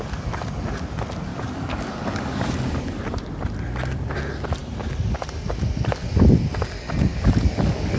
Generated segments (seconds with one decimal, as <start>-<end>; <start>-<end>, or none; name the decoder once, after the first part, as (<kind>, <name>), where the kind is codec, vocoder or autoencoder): 1.3-3.0 (codec, DAC); 7.1-8.0